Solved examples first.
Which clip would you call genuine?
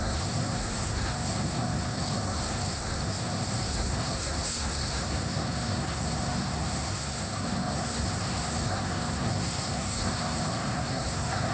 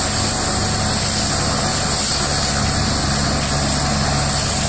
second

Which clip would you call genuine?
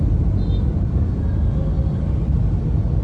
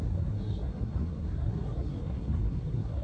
first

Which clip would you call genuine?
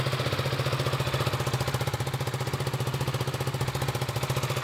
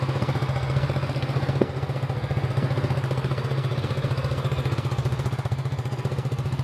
first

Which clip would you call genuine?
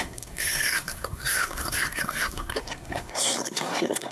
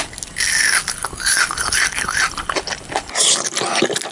second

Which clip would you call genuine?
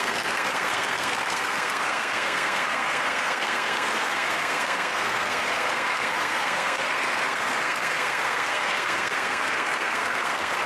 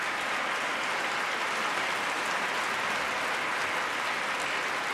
second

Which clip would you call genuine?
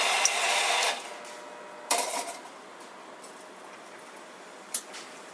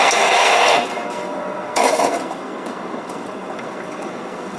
first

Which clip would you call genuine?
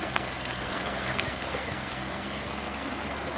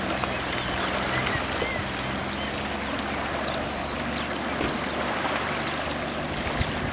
second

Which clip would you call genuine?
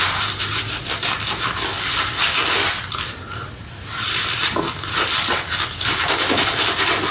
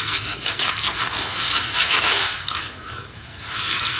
first